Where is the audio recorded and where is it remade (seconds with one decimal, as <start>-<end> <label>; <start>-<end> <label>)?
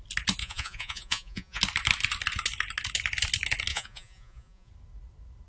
0.0-0.4 recorded; 0.4-1.6 remade; 1.6-3.7 recorded; 3.7-4.7 remade; 4.7-5.5 recorded